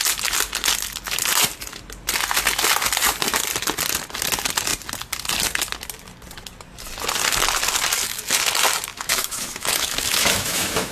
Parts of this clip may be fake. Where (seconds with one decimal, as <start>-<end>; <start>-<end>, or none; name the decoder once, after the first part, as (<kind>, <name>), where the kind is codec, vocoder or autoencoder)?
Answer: 8.9-10.9 (autoencoder, DAC-VAE)